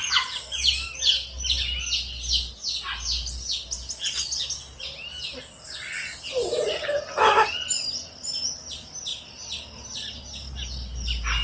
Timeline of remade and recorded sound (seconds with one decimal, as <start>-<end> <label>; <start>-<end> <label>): 0.0-11.4 recorded